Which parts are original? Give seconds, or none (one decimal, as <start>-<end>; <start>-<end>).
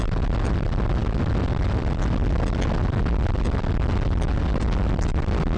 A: 0.0-5.6